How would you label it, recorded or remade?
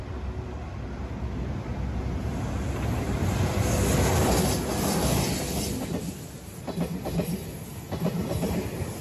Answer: recorded